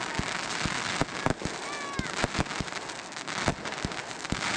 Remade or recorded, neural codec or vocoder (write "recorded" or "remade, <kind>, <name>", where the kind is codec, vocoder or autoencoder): recorded